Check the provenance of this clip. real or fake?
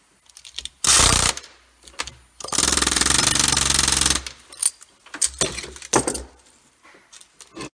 real